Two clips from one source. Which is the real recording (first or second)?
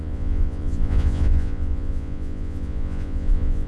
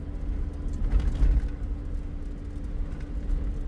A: second